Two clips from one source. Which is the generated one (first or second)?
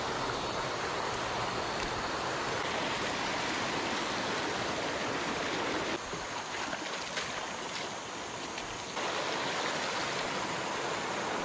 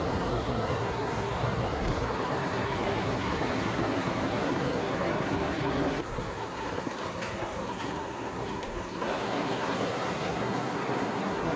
second